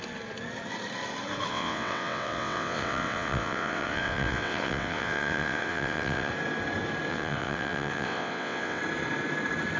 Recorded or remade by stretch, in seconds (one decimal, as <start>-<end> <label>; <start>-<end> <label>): 0.0-1.5 recorded; 1.5-6.3 remade; 6.3-7.1 recorded; 7.1-8.8 remade; 8.8-9.8 recorded